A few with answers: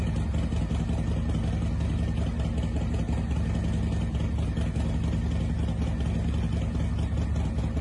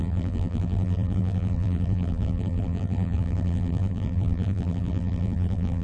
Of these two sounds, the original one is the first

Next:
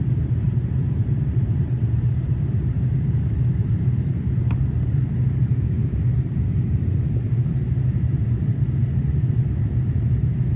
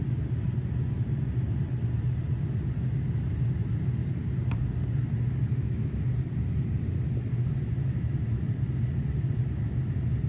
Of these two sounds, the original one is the second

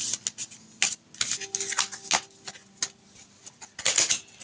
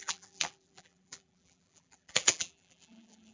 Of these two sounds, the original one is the first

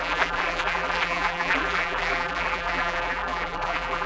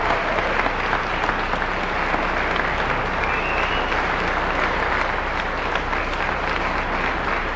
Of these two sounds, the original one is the second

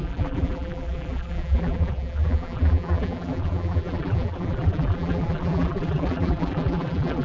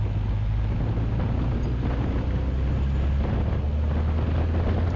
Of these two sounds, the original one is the second